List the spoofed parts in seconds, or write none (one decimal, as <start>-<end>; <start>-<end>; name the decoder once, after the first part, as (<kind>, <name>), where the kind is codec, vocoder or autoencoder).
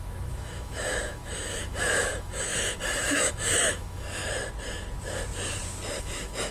0.0-4.2 (autoencoder, DAC-VAE); 6.0-6.5